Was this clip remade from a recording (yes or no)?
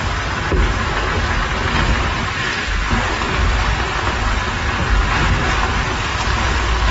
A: no